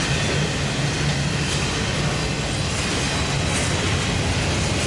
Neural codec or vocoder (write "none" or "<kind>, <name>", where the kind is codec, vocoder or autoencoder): none